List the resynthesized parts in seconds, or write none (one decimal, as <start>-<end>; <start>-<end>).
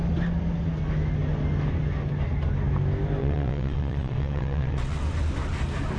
3.2-5.0